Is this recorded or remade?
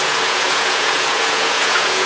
remade